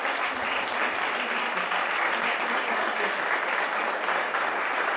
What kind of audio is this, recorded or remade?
recorded